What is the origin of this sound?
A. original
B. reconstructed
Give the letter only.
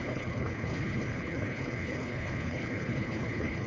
B